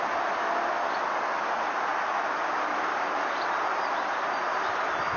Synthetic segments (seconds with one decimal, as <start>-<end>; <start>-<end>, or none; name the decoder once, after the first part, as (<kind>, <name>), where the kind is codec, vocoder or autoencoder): 1.9-5.2 (vocoder, BigVGAN v2)